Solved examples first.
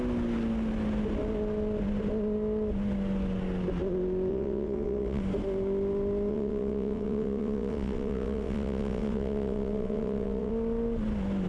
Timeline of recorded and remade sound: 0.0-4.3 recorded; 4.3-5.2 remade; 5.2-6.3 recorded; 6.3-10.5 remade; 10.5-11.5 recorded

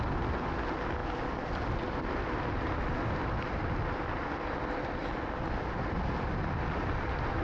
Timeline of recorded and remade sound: 0.0-7.4 recorded

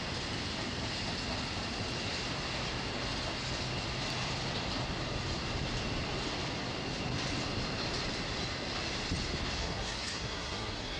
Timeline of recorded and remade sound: 0.0-9.6 recorded; 9.6-11.0 remade

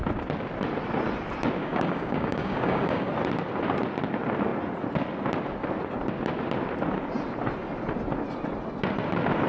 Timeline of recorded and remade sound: 0.0-1.6 recorded; 1.6-3.1 remade; 3.1-9.5 recorded

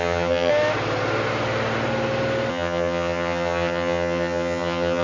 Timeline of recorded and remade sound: 0.0-0.5 remade; 0.5-2.5 recorded; 2.5-5.0 remade